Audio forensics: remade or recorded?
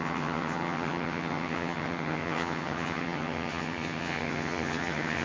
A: remade